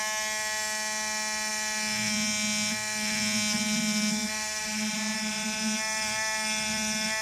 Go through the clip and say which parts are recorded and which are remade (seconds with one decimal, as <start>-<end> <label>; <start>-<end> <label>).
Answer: 0.0-7.2 recorded